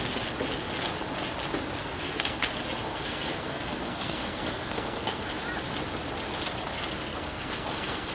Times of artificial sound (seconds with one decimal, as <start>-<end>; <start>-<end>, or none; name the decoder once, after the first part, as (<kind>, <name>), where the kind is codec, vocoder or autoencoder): 1.8-2.5 (codec, SNAC); 2.9-5.2; 7.1-8.1